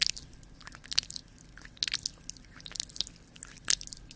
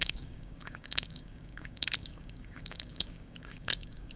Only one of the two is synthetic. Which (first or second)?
second